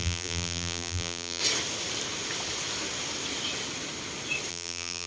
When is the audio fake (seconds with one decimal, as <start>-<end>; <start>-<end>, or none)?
0.0-1.4; 4.5-5.1